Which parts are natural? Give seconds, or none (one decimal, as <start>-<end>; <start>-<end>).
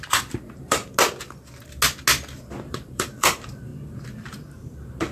0.8-2.7; 3.7-5.1